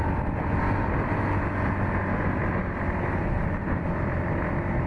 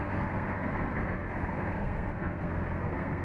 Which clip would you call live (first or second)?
first